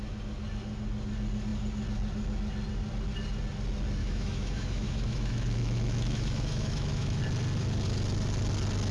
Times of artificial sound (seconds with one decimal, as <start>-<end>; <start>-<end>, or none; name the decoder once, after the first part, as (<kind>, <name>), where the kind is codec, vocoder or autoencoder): 4.0-7.2 (autoencoder, DAC-VAE)